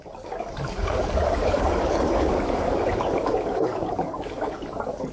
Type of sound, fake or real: fake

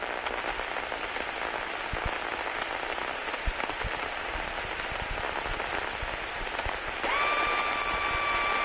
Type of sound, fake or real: real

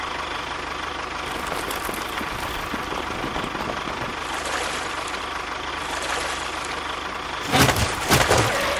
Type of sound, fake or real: real